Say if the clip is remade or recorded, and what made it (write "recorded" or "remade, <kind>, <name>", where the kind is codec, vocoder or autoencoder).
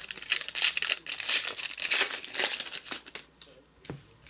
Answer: recorded